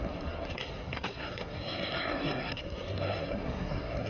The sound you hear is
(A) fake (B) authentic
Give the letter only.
A